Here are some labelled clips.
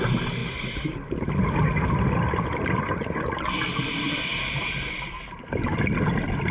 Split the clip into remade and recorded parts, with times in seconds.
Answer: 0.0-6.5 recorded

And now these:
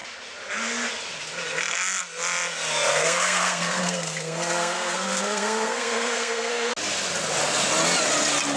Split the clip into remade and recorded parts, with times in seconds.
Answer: 0.0-2.9 recorded; 2.9-6.7 remade; 6.7-8.6 recorded

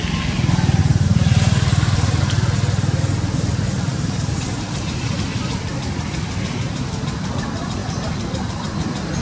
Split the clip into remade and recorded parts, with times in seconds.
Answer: 0.0-0.8 recorded; 0.8-2.2 remade; 2.2-3.9 recorded; 3.9-5.1 remade; 5.1-9.2 recorded

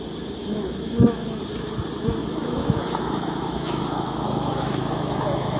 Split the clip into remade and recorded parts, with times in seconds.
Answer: 0.0-0.4 recorded; 0.4-1.4 remade; 1.4-2.2 recorded; 2.2-5.6 remade

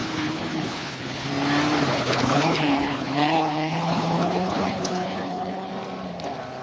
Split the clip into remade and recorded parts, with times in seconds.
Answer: 0.0-1.3 remade; 1.3-1.9 recorded; 1.9-5.7 remade; 5.7-6.6 recorded